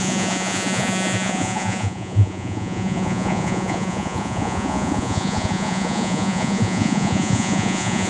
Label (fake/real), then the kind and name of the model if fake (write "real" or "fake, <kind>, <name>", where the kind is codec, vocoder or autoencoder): fake, vocoder, Vocos